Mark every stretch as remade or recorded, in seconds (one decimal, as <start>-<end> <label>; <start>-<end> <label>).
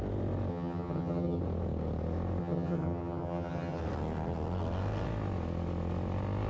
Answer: 0.0-0.5 recorded; 0.5-1.4 remade; 1.4-2.4 recorded; 2.4-3.8 remade; 3.8-6.5 recorded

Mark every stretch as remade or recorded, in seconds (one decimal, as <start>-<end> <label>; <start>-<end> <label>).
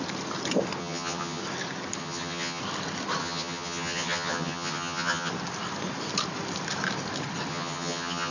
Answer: 0.0-0.8 recorded; 0.8-1.4 remade; 1.4-2.0 recorded; 2.0-2.6 remade; 2.6-3.2 recorded; 3.2-5.3 remade; 5.3-7.5 recorded; 7.5-8.3 remade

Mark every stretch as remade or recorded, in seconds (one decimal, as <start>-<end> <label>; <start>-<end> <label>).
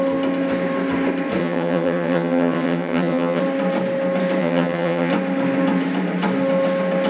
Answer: 0.0-1.4 recorded; 1.4-3.4 remade; 3.4-4.4 recorded; 4.4-5.1 remade; 5.1-7.1 recorded